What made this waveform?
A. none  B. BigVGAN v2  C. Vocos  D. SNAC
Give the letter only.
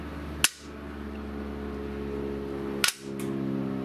A